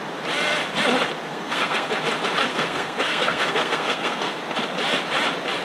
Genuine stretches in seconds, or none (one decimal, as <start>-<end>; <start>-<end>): 0.0-1.3; 1.9-2.5; 4.4-5.6